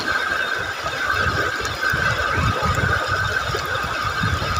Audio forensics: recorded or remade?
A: recorded